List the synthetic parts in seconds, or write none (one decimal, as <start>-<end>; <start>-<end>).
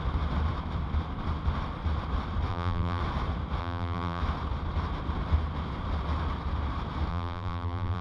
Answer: 2.5-3.0; 3.6-4.2; 7.1-8.0